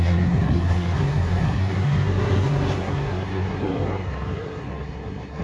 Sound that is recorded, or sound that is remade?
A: remade